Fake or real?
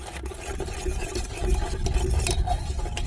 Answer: real